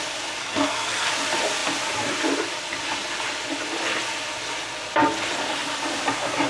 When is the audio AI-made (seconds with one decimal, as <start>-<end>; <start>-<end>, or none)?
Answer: 0.4-1.1